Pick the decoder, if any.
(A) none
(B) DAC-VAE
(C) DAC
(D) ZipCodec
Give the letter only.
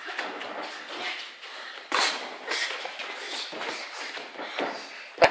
A